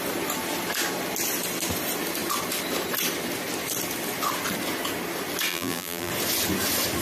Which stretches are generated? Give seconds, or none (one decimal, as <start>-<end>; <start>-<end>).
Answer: 5.5-6.1